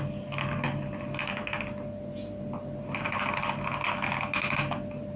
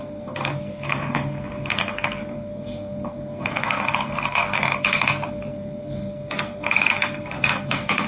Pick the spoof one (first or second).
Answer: second